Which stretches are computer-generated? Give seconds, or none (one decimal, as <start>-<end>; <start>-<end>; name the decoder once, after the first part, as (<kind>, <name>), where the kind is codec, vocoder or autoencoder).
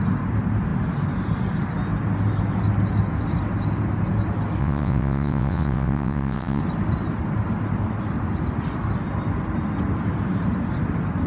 4.6-6.6 (vocoder, WaveNeXt)